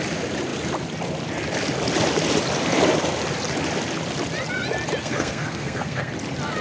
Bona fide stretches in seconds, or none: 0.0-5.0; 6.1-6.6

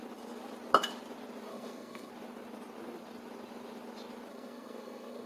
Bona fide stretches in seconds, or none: 0.0-1.5; 2.1-4.3